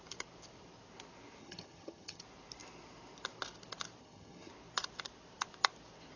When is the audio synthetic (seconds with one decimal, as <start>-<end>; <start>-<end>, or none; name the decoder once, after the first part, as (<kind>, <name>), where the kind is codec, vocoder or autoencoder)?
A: 1.4-2.2 (vocoder, HiFi-GAN); 4.0-4.5